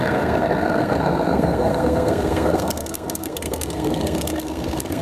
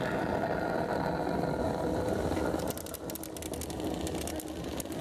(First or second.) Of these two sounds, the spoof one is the first